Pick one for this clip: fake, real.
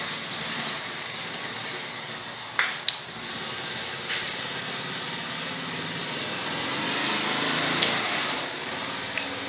real